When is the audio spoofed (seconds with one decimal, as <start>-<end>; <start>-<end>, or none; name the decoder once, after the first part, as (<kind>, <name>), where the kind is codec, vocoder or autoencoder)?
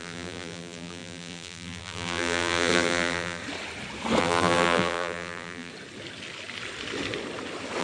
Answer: 0.0-3.4 (vocoder, BigVGAN v2); 4.2-5.7